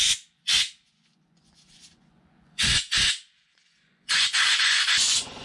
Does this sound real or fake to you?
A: fake